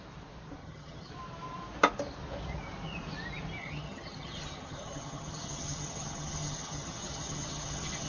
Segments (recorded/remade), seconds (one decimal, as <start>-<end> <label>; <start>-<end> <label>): 0.0-0.6 recorded; 0.6-1.1 remade; 1.1-3.6 recorded; 3.6-8.1 remade